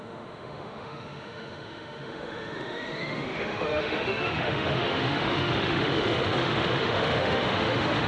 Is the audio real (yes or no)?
no